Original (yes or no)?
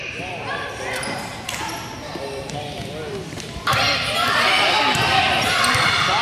no